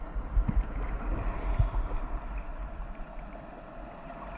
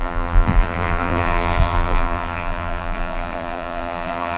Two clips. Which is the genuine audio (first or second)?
first